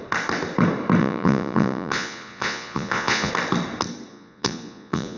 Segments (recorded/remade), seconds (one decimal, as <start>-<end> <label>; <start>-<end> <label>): 0.0-1.0 recorded; 1.0-3.3 remade; 3.3-4.1 recorded; 4.1-5.2 remade